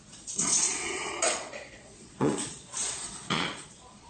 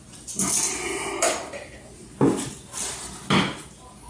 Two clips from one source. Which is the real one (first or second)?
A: second